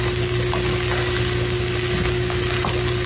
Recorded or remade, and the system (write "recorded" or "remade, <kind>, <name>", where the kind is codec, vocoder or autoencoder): recorded